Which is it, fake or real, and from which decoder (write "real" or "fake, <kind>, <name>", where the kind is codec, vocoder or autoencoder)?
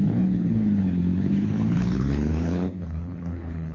fake, codec, HILCodec